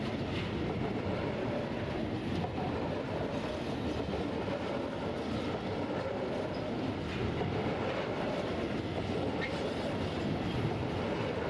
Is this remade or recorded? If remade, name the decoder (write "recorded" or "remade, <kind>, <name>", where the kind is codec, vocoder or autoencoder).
recorded